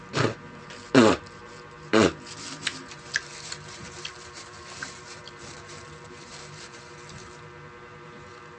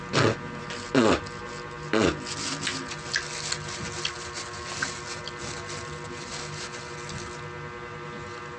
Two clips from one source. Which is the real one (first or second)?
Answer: second